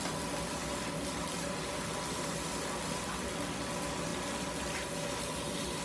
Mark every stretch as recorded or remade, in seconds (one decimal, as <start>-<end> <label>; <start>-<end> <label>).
0.0-5.8 recorded